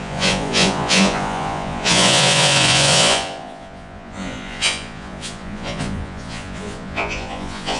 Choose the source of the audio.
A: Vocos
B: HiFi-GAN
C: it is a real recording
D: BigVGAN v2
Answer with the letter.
A